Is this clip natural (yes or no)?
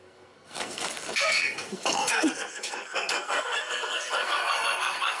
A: no